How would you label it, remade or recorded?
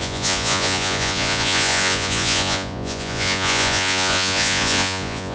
remade